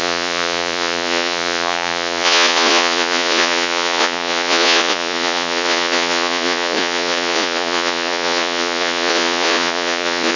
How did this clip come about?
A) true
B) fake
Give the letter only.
B